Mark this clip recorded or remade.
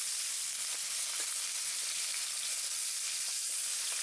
recorded